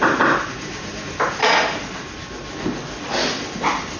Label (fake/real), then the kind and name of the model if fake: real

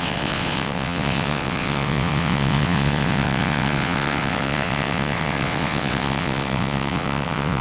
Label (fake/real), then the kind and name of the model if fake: fake, vocoder, WaveNeXt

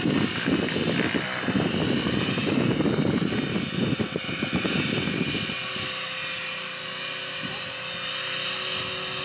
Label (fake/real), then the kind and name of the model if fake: real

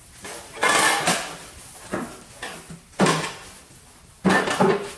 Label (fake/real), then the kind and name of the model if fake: real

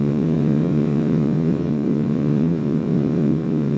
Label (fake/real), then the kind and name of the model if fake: fake, vocoder, WaveNeXt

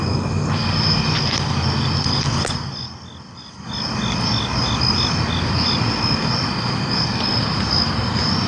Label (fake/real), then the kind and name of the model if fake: real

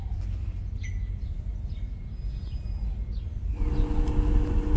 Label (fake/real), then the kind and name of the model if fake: real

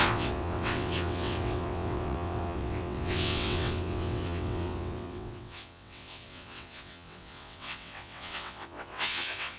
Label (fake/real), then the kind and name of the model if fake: fake, vocoder, WaveNeXt